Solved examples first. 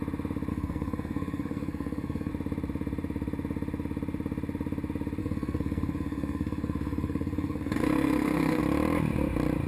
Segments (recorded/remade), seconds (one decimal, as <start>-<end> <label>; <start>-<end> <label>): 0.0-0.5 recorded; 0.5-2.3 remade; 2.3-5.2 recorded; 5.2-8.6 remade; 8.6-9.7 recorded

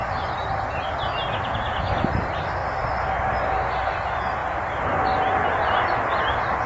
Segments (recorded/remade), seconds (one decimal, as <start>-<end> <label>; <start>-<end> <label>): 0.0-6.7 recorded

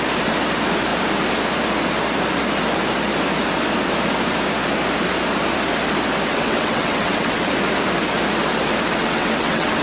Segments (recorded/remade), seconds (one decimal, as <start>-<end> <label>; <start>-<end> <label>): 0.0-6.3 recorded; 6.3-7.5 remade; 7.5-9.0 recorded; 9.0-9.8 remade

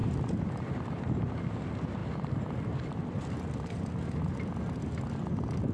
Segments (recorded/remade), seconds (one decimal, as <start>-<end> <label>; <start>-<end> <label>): 0.0-1.0 remade; 1.0-2.0 recorded; 2.0-5.1 remade; 5.1-5.7 recorded